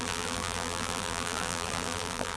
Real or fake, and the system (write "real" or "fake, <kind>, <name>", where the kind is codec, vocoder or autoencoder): fake, vocoder, BigVGAN v2